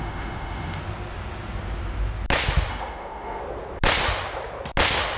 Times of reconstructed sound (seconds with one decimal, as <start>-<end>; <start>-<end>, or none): 0.0-0.8; 2.7-3.4